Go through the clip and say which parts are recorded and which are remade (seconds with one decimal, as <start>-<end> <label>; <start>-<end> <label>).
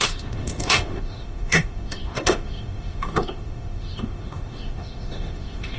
0.0-5.8 remade